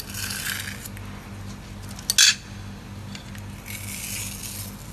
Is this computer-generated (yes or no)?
no